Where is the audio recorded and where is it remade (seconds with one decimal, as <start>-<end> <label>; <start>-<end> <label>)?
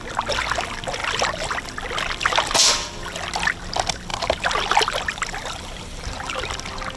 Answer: 0.0-7.0 recorded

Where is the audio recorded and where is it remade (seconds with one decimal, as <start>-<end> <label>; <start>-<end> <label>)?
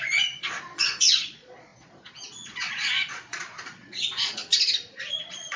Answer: 0.0-4.4 remade; 4.4-5.1 recorded; 5.1-5.6 remade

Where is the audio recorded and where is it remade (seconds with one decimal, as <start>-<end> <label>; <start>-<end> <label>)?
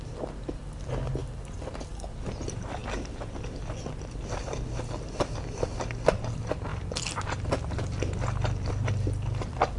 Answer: 0.0-9.8 recorded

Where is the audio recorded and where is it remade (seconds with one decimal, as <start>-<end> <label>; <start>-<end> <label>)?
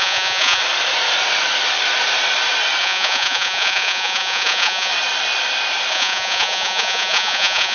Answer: 0.0-0.6 remade; 0.6-2.8 recorded; 2.8-4.9 remade; 4.9-5.9 recorded; 5.9-7.7 remade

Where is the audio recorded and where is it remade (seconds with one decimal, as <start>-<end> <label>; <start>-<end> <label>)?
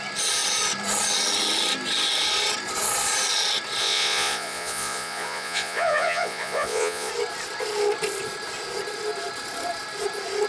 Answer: 0.0-3.8 recorded; 3.8-7.1 remade; 7.1-10.5 recorded